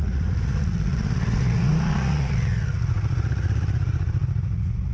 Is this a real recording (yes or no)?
no